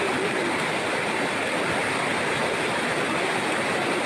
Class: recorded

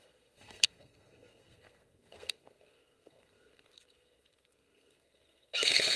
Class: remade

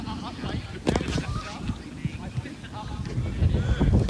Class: recorded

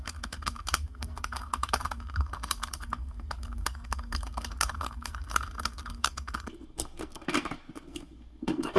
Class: remade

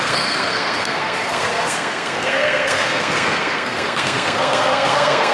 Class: remade